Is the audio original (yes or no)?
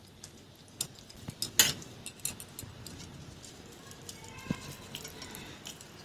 yes